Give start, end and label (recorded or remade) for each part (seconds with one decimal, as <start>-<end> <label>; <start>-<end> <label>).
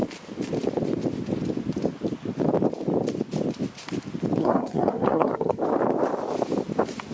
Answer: 0.0-4.4 recorded; 4.4-5.6 remade; 5.6-7.1 recorded